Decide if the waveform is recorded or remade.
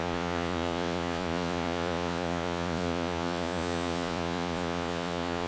remade